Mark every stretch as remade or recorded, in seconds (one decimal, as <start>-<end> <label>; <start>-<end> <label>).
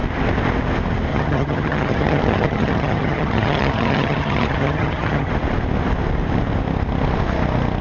0.0-1.1 recorded; 1.1-5.3 remade; 5.3-7.8 recorded